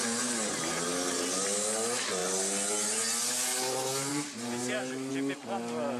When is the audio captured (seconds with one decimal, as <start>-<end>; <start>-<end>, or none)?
0.0-4.1; 5.1-6.0